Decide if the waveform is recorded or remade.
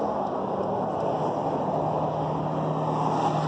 recorded